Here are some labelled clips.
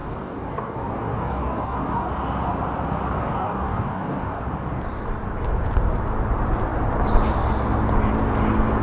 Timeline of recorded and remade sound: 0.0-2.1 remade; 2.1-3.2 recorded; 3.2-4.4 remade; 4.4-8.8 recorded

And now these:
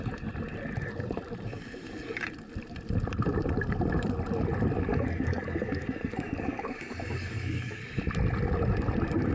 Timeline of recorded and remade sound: 0.0-4.9 recorded; 4.9-7.8 remade; 7.8-9.3 recorded

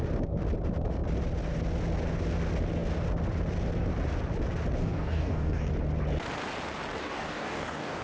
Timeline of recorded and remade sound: 0.0-4.8 recorded; 4.8-5.7 remade; 5.7-7.0 recorded; 7.0-8.0 remade

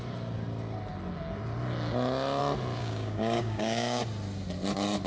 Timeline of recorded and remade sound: 0.0-2.8 recorded; 2.8-4.0 remade; 4.0-5.1 recorded

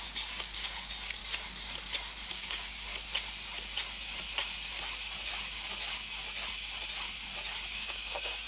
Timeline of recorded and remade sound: 0.0-1.2 remade; 1.2-2.3 recorded; 2.3-2.9 remade; 2.9-7.7 recorded; 7.7-8.5 remade